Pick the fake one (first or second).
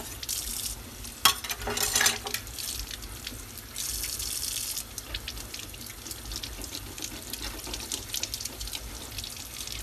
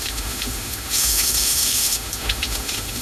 second